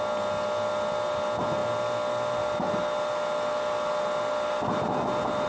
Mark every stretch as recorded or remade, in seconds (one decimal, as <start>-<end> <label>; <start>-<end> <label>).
0.0-5.5 recorded